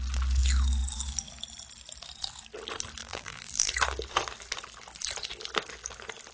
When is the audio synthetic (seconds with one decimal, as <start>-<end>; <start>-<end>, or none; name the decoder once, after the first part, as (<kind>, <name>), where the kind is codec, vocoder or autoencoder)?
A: 3.0-3.7 (vocoder, BigVGAN v2)